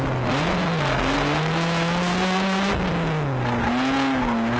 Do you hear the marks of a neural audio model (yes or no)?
no